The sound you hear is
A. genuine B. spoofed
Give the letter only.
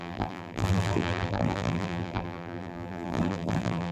B